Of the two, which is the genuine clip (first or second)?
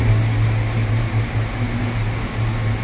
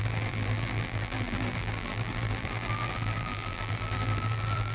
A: first